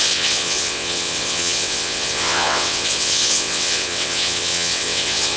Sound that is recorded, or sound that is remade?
remade